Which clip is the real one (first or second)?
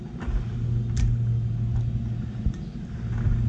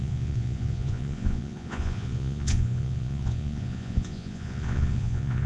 first